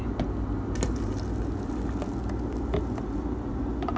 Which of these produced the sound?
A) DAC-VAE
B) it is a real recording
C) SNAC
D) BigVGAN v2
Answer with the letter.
B